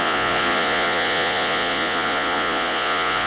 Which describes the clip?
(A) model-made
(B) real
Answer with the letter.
A